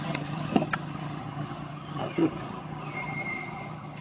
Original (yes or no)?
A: no